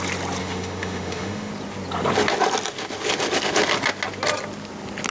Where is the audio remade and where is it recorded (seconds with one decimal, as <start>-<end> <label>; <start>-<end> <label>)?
0.0-0.4 recorded; 0.4-1.5 remade; 1.5-5.1 recorded